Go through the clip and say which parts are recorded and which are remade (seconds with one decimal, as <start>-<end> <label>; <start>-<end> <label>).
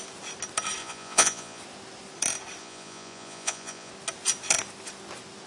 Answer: 0.0-0.8 recorded; 0.8-1.6 remade; 1.6-2.6 recorded; 2.6-3.9 remade; 3.9-5.5 recorded